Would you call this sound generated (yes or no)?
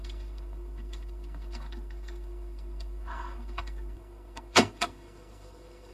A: yes